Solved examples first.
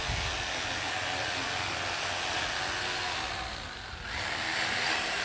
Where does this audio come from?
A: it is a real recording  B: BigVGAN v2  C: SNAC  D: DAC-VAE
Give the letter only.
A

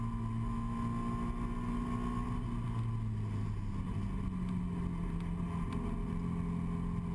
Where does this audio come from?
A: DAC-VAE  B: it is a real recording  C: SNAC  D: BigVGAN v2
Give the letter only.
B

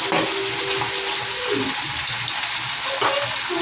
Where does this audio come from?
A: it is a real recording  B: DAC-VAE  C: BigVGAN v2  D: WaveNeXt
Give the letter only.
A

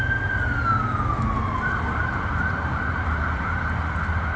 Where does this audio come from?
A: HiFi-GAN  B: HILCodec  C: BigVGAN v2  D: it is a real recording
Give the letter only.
D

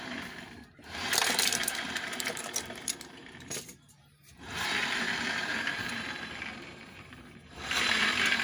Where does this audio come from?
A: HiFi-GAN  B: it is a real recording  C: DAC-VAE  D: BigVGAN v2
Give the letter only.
D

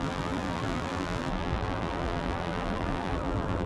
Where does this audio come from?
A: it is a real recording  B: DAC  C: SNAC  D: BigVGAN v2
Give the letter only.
D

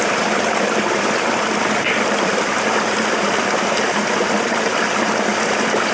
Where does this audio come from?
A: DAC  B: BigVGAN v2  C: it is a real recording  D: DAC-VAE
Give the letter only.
B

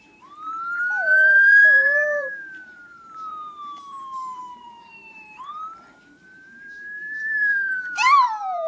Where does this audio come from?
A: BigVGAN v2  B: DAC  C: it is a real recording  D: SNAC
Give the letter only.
A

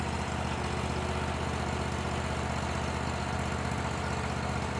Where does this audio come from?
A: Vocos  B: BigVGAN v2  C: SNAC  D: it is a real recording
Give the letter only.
D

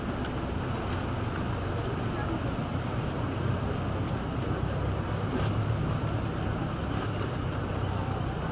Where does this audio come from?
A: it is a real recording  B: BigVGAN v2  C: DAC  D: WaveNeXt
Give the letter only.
A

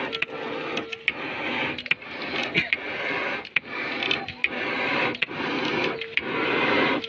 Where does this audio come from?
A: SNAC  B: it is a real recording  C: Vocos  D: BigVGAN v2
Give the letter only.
B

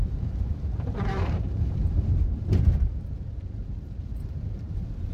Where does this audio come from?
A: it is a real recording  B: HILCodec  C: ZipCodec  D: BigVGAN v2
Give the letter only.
D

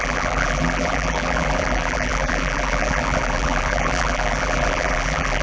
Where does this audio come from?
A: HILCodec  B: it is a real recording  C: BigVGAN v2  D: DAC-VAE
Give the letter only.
C